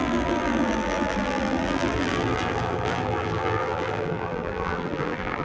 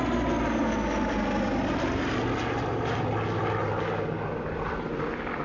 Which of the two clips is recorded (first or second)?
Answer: second